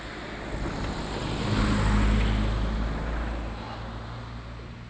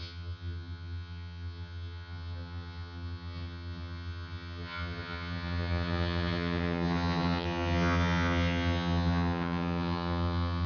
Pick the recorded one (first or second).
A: first